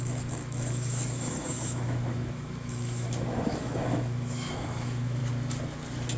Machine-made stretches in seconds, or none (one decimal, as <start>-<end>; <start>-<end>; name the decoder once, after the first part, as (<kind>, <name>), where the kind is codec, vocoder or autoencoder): 0.0-5.2 (autoencoder, DAC-VAE)

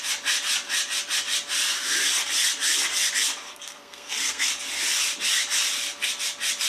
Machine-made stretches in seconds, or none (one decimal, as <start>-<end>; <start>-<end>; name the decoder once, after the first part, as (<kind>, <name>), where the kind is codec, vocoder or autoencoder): 3.5-4.5 (codec, SNAC)

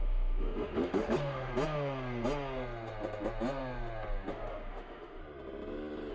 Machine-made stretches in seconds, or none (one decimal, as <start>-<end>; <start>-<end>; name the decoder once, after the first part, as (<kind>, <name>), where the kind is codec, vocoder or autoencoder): 0.0-1.5 (autoencoder, DAC-VAE); 4.3-5.2